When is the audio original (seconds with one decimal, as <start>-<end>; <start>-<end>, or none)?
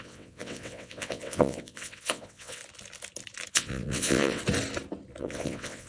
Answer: 2.6-3.5; 4.4-5.2